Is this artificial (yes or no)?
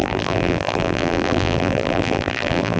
yes